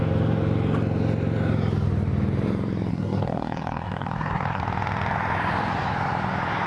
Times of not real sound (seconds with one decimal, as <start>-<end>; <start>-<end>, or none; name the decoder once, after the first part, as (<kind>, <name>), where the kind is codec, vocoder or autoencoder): 2.9-4.6 (codec, SNAC)